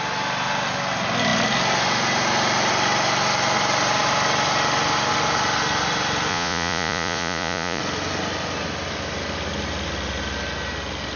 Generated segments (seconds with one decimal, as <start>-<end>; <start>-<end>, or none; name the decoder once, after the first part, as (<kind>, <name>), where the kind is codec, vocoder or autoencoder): 6.3-7.8 (vocoder, Vocos)